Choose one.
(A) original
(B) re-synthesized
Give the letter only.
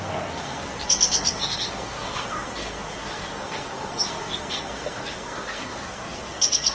B